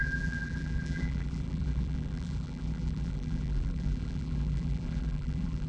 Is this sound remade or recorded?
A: remade